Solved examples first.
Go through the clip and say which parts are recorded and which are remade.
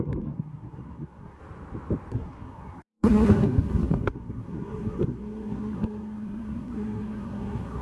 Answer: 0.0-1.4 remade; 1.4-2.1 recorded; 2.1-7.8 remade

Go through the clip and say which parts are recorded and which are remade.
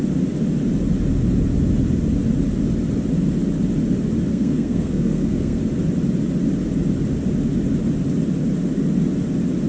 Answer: 0.0-4.3 recorded; 4.3-5.6 remade; 5.6-9.7 recorded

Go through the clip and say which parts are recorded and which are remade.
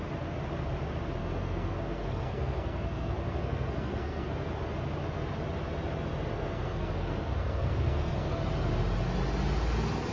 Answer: 0.0-1.2 recorded; 1.2-4.5 remade; 4.5-6.3 recorded; 6.3-8.4 remade; 8.4-10.1 recorded